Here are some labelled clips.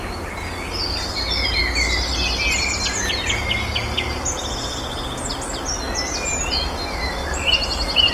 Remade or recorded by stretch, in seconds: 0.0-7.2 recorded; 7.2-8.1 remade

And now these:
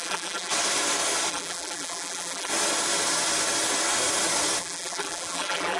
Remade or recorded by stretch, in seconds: 0.0-0.5 remade; 0.5-1.3 recorded; 1.3-2.5 remade; 2.5-4.6 recorded; 4.6-5.8 remade